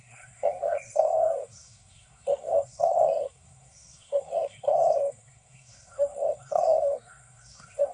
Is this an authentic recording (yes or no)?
no